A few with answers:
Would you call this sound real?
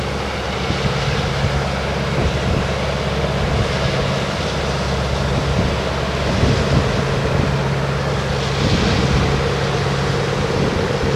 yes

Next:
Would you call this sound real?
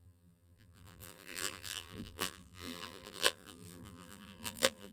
no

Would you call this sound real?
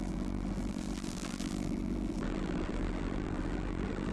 no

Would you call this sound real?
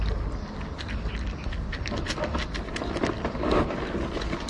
yes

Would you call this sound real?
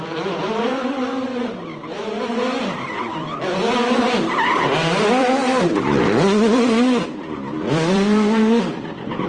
no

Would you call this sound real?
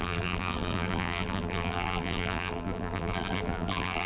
no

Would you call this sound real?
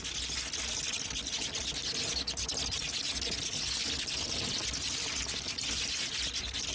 yes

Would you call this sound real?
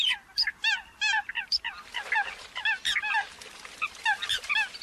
no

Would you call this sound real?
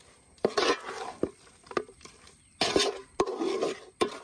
yes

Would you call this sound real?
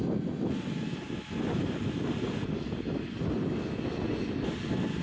yes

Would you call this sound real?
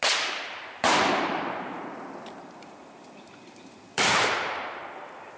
no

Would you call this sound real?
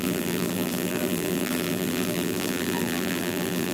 no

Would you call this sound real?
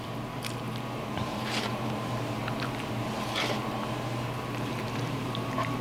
no